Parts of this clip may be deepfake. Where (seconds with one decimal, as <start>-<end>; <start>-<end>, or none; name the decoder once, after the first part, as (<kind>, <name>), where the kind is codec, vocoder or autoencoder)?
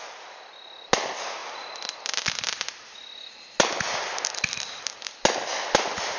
none